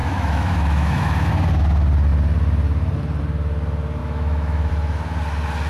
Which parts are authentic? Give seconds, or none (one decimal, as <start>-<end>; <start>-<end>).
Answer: 1.3-4.0; 4.7-5.7

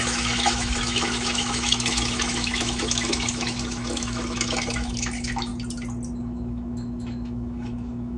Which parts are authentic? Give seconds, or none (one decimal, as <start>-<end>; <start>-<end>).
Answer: 5.5-6.2

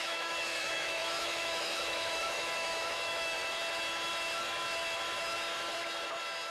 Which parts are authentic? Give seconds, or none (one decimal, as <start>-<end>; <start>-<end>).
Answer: 3.4-6.5

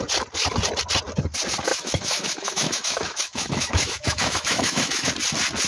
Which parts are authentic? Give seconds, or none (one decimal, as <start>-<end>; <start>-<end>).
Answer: 0.0-1.7; 5.1-5.7

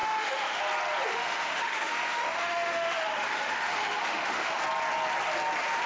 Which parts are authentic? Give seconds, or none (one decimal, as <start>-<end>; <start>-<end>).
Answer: 0.6-1.1; 4.6-5.9

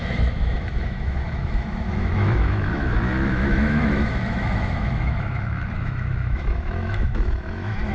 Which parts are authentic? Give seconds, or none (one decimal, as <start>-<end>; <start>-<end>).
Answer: none

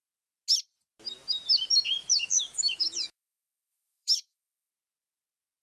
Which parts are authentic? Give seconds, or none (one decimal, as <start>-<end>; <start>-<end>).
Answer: 0.0-2.0; 4.7-5.6